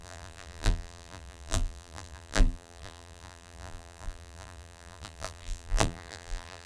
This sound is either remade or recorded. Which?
remade